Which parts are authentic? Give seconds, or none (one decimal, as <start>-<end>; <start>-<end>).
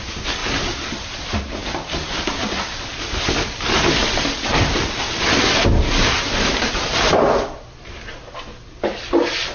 none